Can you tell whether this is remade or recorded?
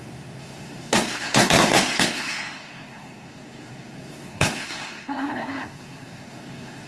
remade